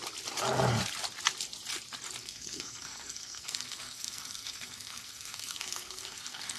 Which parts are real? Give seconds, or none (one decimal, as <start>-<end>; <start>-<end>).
0.0-2.2